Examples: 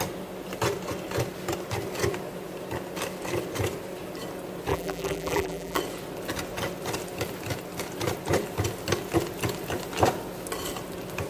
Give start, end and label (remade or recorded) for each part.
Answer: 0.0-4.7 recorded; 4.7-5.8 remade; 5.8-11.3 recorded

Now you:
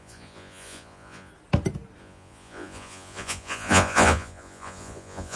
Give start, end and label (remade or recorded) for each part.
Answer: 0.0-1.3 remade; 1.3-2.0 recorded; 2.0-5.4 remade

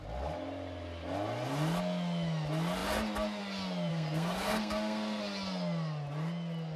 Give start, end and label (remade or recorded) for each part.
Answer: 0.0-3.9 recorded; 3.9-5.2 remade; 5.2-6.8 recorded

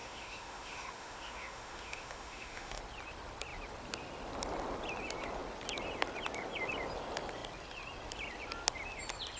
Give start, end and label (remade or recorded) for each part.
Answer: 0.0-2.8 remade; 2.8-9.4 recorded

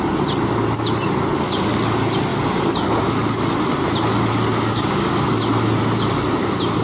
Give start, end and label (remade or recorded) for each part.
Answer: 0.0-4.5 recorded; 4.5-5.4 remade; 5.4-6.8 recorded

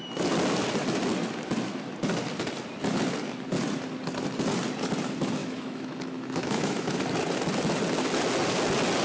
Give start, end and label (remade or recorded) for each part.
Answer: 0.0-5.4 recorded; 5.4-7.0 remade; 7.0-9.0 recorded